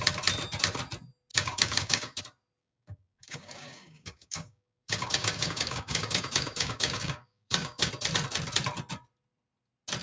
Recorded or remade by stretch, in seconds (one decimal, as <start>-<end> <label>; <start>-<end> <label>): 0.0-1.3 recorded; 1.3-2.2 remade; 2.2-2.6 recorded; 2.6-7.9 remade; 7.9-10.0 recorded